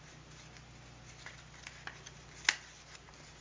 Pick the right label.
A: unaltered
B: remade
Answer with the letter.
A